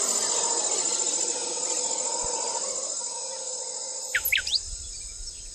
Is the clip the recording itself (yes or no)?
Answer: yes